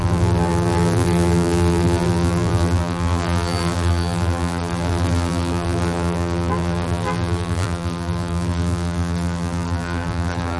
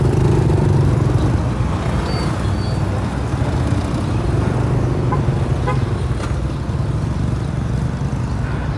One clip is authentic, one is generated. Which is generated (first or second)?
first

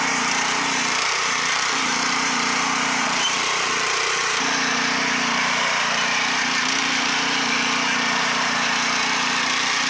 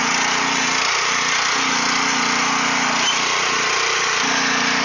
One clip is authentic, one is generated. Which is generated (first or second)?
first